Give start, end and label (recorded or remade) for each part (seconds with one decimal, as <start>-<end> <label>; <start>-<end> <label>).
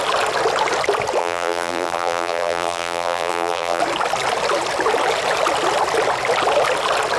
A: 0.0-1.2 recorded; 1.2-3.8 remade; 3.8-7.2 recorded